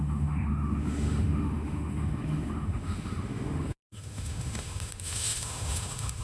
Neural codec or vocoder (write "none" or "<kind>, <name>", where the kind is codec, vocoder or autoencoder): autoencoder, DAC-VAE